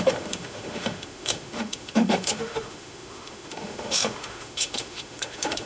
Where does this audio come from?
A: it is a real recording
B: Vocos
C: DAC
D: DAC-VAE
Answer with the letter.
D